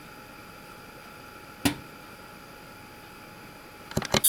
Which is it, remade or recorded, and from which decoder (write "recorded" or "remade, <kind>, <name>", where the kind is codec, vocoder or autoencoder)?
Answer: recorded